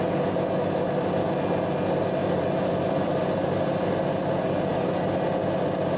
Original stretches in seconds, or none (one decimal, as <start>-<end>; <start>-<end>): 0.0-2.2; 3.2-6.0